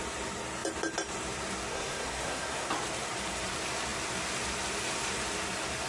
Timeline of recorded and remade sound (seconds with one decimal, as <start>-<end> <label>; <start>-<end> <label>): 0.0-1.7 recorded; 1.7-2.7 remade; 2.7-5.9 recorded